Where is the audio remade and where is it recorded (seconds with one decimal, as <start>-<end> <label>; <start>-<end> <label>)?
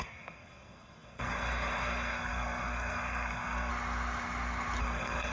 0.0-3.7 remade; 3.7-4.8 recorded; 4.8-5.3 remade